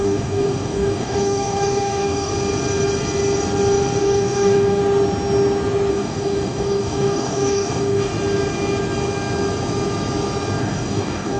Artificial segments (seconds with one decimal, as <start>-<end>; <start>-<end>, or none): 0.0-2.3; 4.0-4.8; 5.9-8.1; 10.6-11.4